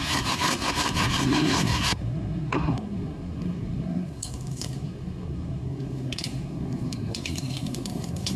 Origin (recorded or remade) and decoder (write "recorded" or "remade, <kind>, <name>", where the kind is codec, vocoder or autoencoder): remade, codec, SNAC